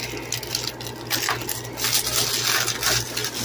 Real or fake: real